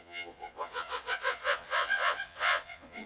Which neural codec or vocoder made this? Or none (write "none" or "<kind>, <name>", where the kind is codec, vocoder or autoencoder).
vocoder, Vocos